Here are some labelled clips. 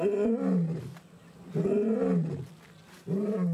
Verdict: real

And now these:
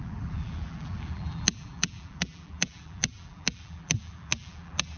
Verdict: fake